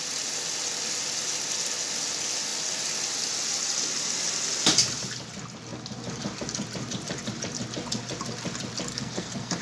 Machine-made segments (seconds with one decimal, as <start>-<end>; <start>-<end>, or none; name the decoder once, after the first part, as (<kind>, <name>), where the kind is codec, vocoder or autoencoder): 8.9-9.6 (codec, SNAC)